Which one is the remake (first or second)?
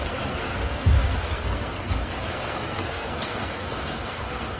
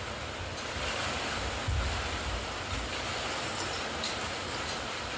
first